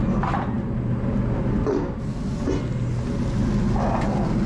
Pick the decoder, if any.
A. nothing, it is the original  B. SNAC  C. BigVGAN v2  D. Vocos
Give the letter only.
A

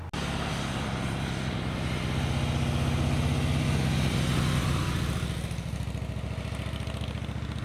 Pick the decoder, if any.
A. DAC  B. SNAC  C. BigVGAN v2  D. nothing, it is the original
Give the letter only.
D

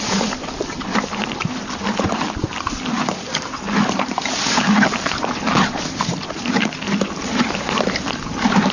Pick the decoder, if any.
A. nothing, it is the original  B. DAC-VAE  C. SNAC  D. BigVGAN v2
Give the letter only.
D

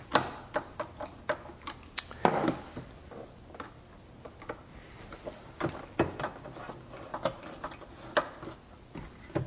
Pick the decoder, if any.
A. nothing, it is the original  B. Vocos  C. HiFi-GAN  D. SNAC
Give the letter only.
A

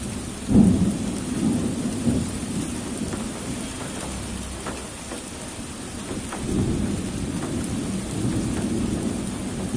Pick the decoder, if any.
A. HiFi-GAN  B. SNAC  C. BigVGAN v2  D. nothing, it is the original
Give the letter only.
D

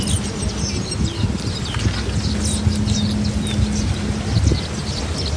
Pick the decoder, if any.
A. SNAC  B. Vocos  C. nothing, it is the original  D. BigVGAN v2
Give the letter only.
C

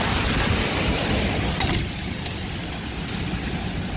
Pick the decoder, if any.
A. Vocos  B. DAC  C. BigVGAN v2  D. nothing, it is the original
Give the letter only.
D